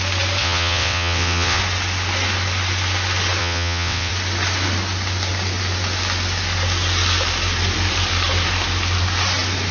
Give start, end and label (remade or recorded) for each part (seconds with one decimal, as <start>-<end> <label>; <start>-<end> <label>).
0.0-0.4 recorded; 0.4-1.6 remade; 1.6-3.4 recorded; 3.4-4.1 remade; 4.1-9.7 recorded